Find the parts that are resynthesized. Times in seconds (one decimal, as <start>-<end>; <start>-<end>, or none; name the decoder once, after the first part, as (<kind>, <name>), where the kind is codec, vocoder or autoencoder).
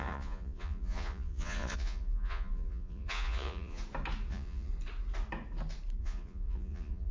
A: 0.0-3.8 (vocoder, Vocos); 4.3-4.7; 6.0-7.1